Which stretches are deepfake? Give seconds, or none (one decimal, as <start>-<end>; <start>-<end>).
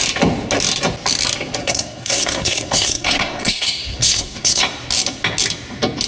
1.6-4.6